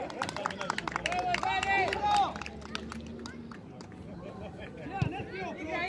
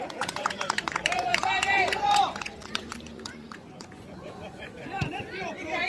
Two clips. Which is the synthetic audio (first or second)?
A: second